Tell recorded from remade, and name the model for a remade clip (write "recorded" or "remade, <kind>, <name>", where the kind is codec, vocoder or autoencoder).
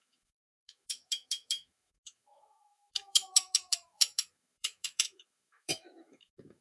remade, autoencoder, DAC-VAE